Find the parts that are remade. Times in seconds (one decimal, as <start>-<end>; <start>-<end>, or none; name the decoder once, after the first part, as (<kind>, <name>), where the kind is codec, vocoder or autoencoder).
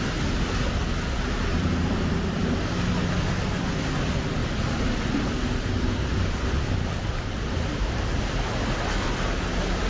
1.5-2.6 (vocoder, BigVGAN v2); 4.4-8.2